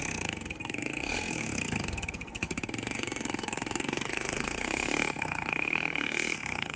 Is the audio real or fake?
fake